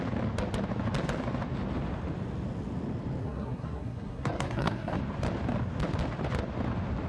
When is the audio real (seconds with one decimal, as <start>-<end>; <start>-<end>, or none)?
0.0-3.2; 5.0-7.1